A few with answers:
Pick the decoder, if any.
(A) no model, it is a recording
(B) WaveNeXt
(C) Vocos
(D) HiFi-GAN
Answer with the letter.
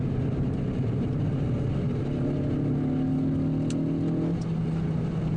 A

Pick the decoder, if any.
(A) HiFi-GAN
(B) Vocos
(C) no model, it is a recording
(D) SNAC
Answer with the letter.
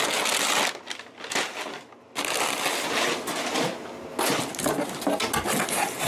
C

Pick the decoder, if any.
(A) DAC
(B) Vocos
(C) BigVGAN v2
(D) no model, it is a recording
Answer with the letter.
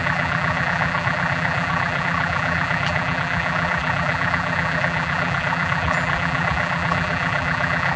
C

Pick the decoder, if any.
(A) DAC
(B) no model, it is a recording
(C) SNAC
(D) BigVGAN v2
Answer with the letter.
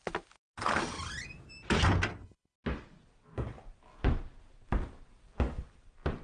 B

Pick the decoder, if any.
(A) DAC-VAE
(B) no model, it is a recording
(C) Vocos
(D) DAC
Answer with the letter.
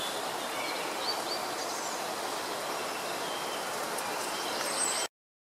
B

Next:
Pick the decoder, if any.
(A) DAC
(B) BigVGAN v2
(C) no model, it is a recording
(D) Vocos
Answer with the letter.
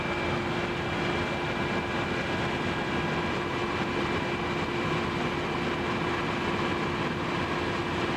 C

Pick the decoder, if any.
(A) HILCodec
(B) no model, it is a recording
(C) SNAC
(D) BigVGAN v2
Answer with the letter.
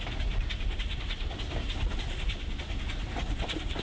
B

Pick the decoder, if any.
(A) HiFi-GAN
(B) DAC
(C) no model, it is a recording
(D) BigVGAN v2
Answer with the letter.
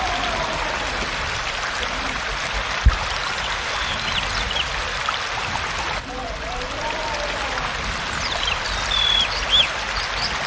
C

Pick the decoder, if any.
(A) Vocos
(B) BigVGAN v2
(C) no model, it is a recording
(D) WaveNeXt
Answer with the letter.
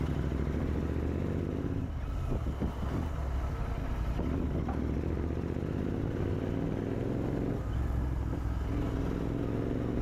C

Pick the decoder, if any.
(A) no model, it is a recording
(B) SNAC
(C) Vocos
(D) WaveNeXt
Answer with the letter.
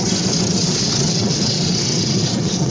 D